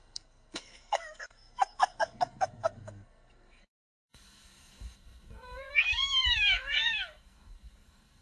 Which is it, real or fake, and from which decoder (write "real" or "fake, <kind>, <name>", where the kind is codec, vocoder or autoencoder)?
fake, codec, SNAC